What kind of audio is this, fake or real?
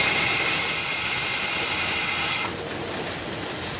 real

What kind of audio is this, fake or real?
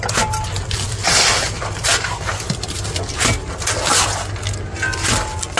real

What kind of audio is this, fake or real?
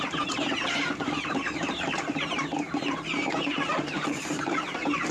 fake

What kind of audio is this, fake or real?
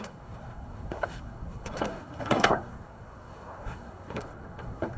fake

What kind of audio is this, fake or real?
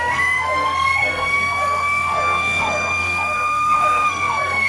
fake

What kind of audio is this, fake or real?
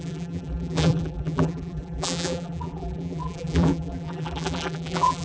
fake